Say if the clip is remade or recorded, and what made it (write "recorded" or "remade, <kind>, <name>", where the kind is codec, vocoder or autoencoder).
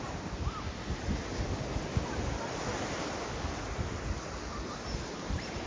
recorded